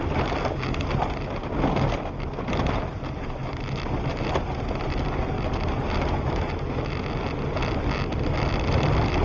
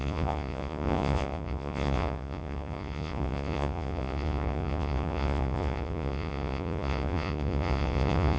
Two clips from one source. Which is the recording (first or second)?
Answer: first